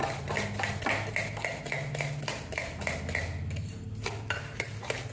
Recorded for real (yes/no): yes